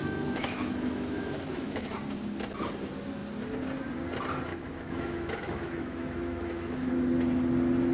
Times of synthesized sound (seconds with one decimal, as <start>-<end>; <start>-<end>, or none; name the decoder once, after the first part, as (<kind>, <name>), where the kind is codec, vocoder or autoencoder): 0.0-1.9 (autoencoder, DAC-VAE); 4.5-6.9